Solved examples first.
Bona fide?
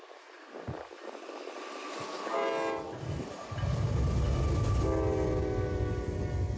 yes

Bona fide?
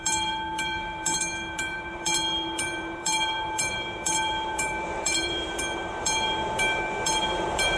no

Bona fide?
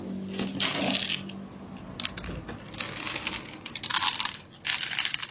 yes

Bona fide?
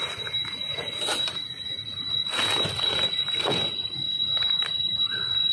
yes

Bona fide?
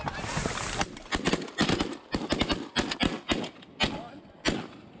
yes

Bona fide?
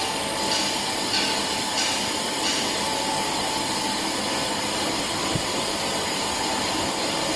yes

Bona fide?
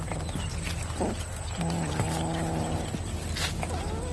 yes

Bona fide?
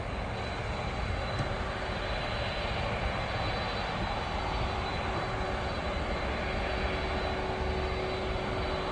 yes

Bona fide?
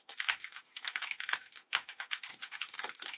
no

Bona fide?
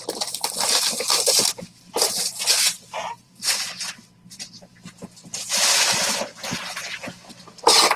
no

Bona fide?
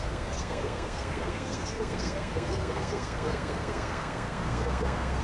no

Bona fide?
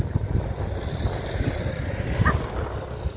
yes